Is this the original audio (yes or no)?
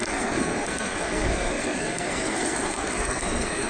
no